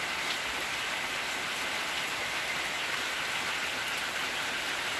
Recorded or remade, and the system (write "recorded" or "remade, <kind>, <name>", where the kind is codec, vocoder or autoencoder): recorded